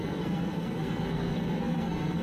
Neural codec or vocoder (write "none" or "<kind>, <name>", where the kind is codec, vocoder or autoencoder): codec, SNAC